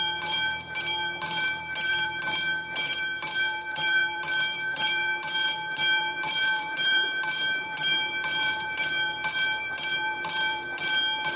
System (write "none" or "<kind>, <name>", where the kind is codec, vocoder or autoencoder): vocoder, BigVGAN v2